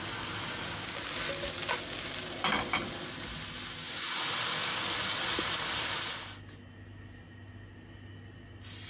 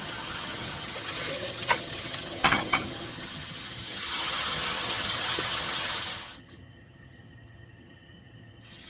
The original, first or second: first